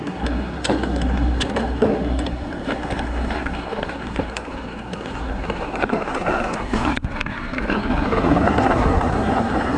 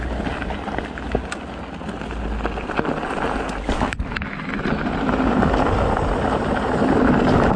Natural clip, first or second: second